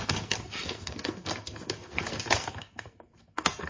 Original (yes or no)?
no